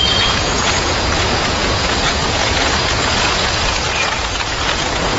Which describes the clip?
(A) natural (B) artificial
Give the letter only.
B